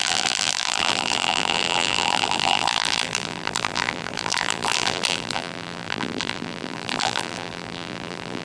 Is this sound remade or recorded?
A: remade